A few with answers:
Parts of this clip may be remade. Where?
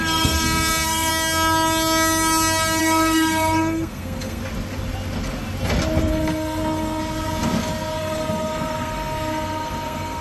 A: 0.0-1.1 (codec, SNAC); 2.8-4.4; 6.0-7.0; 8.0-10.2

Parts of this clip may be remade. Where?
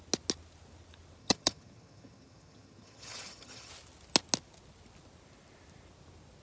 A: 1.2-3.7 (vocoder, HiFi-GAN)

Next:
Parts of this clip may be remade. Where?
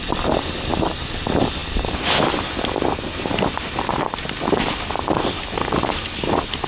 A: none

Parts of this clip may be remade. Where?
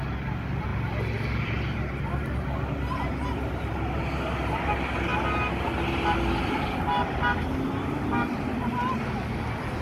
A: none